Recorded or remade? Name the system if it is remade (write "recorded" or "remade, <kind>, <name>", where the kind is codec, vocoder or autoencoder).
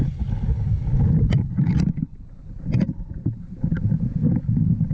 recorded